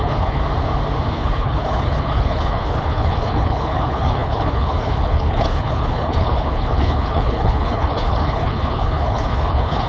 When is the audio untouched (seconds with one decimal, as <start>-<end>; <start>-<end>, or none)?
0.4-1.1